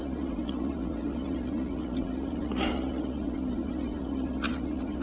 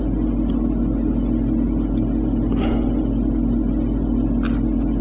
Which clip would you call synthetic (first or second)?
first